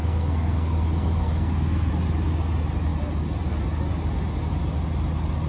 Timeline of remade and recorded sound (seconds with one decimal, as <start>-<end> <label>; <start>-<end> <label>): 0.0-1.9 remade; 1.9-5.5 recorded